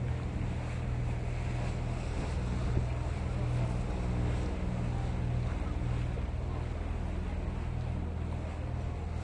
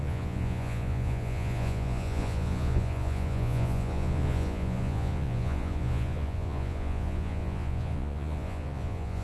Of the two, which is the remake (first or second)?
second